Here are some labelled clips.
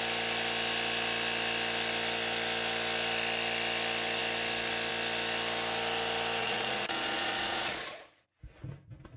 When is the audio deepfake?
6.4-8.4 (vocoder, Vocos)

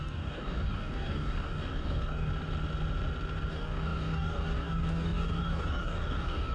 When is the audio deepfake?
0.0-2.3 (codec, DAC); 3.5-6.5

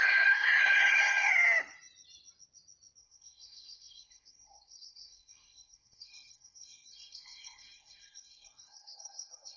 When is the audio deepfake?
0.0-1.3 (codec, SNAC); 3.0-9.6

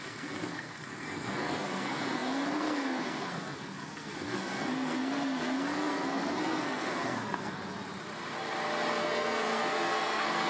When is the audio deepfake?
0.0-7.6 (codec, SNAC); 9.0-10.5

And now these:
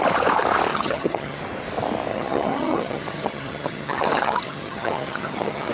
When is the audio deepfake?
0.7-1.4 (vocoder, HiFi-GAN); 2.1-5.7